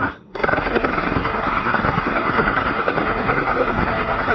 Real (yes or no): no